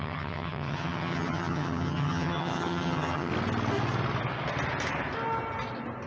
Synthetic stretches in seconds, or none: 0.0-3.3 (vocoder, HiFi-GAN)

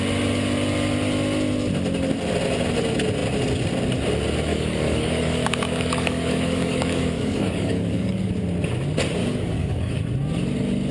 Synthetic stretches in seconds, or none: 4.5-8.3 (codec, DAC); 9.2-10.0